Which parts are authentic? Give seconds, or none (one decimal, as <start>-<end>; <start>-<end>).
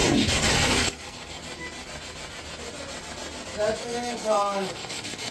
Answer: 0.0-0.5; 1.4-3.8